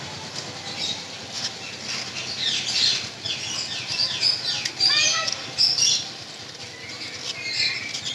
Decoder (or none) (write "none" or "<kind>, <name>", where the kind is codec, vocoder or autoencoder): none